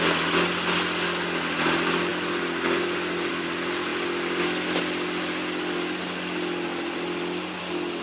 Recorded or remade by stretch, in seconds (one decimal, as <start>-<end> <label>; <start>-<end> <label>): 0.0-8.0 recorded